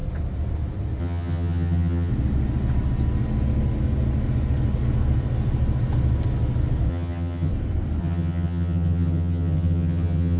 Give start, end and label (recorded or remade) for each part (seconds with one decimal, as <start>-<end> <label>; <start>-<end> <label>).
0.0-1.0 recorded; 1.0-2.1 remade; 2.1-6.9 recorded; 6.9-7.5 remade; 7.5-8.0 recorded; 8.0-10.4 remade